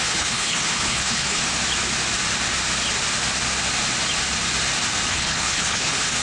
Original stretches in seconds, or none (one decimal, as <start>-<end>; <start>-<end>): 1.4-5.1